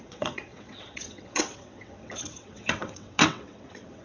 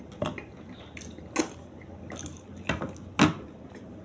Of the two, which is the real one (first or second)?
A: second